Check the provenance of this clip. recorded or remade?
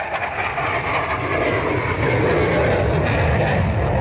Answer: recorded